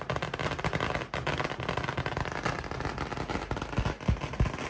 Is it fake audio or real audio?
real